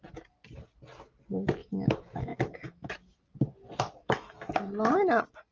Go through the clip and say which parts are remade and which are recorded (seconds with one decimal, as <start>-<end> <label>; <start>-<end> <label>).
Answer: 0.0-1.6 recorded; 1.6-2.9 remade; 2.9-4.0 recorded; 4.0-4.5 remade; 4.5-5.5 recorded